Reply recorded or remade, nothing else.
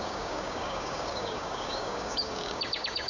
remade